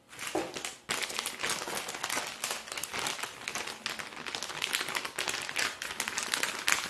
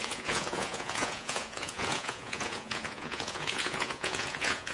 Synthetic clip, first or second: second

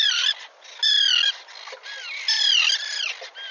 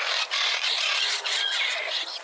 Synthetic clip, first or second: second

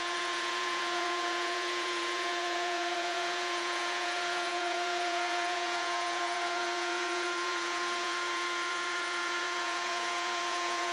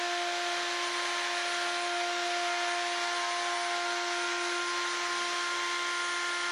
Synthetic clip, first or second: first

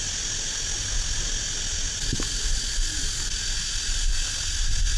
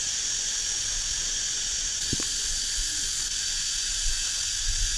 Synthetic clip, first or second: second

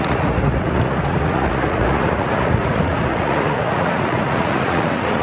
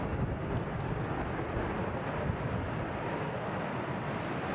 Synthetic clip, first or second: first